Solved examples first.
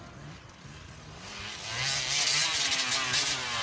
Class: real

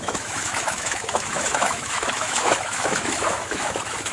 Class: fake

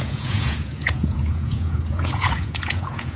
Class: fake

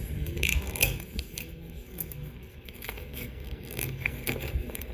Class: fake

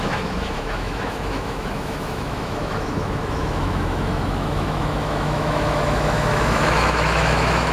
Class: fake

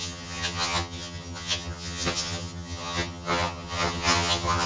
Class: fake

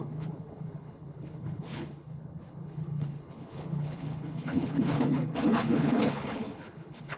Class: fake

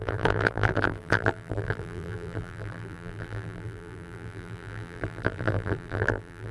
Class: fake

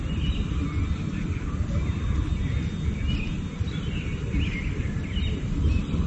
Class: real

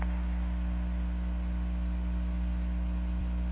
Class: real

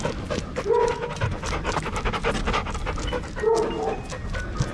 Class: real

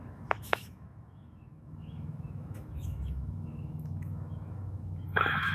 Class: fake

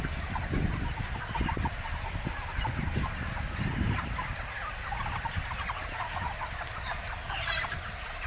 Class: real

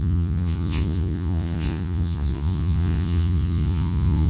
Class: fake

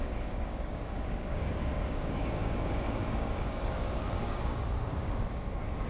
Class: fake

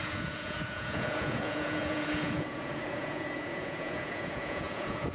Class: fake